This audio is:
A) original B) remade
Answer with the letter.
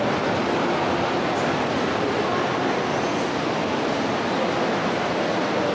A